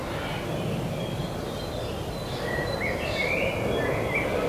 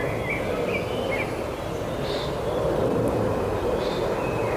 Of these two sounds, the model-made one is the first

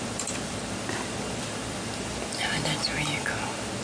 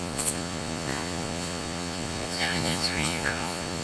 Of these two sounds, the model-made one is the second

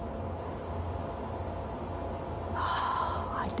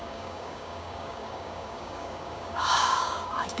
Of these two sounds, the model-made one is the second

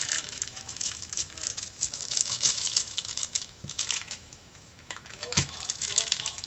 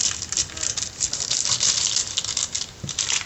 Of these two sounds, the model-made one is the first